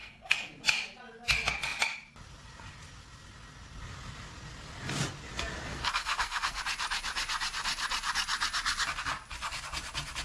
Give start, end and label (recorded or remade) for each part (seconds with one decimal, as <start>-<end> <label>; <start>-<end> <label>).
0.0-0.5 remade; 0.5-5.6 recorded; 5.6-6.6 remade; 6.6-10.2 recorded